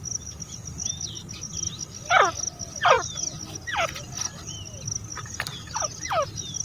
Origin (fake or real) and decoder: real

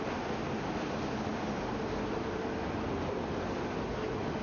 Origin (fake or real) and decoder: real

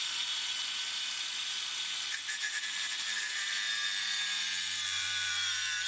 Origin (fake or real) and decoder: fake, vocoder, BigVGAN v2